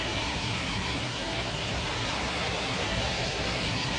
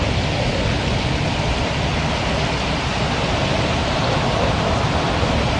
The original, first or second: second